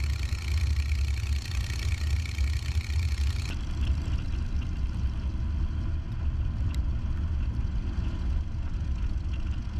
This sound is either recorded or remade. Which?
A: recorded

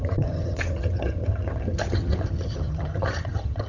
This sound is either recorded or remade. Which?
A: remade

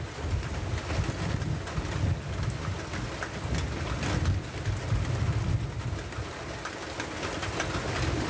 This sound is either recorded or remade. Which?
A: recorded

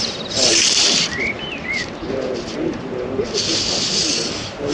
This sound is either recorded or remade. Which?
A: recorded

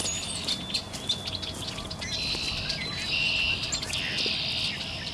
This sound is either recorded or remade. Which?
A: recorded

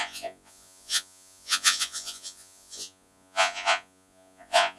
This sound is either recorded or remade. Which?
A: remade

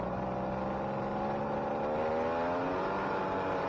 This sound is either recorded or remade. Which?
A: recorded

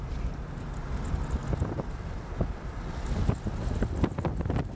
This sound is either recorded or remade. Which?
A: recorded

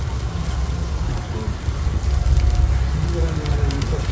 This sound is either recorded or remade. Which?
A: recorded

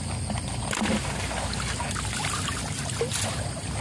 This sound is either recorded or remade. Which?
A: recorded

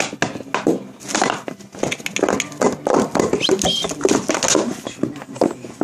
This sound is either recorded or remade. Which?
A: recorded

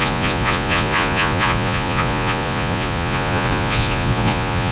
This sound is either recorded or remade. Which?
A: remade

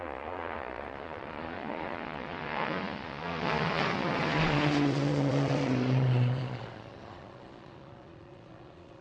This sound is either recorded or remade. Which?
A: remade